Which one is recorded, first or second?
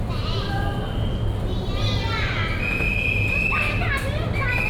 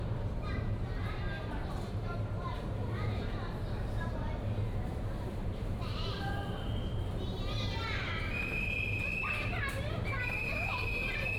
first